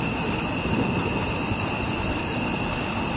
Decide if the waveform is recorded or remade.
recorded